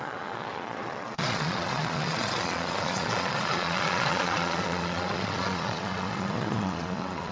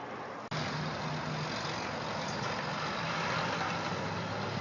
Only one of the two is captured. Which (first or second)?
second